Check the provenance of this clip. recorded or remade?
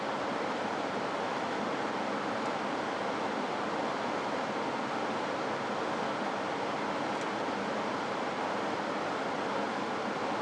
recorded